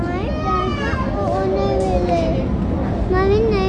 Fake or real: real